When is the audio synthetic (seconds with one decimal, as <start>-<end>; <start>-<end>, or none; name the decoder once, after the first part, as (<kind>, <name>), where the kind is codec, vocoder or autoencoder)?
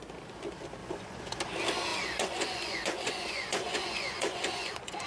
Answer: 0.8-1.4 (vocoder, Vocos); 1.9-5.1